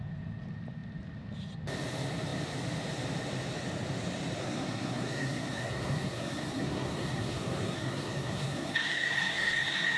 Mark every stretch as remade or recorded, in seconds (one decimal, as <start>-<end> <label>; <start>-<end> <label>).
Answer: 0.0-4.4 recorded; 4.4-10.0 remade

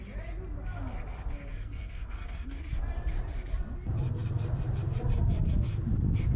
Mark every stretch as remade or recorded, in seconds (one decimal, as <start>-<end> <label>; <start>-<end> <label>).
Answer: 0.0-1.5 recorded; 1.5-2.6 remade; 2.6-6.4 recorded

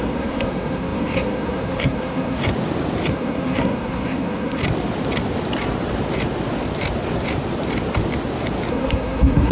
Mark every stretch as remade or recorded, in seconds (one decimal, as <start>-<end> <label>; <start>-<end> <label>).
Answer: 0.0-2.4 remade; 2.4-3.1 recorded; 3.1-4.6 remade; 4.6-8.7 recorded; 8.7-9.5 remade